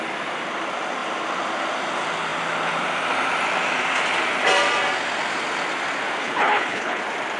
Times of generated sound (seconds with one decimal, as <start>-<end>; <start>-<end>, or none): 6.2-7.0